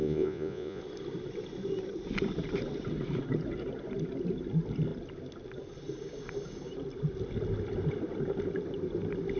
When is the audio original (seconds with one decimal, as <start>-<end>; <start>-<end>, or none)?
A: 0.8-9.4